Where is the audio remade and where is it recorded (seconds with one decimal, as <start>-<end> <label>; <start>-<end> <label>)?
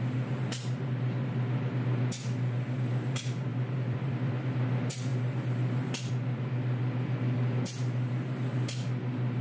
0.0-3.5 recorded; 3.5-4.3 remade; 4.3-9.4 recorded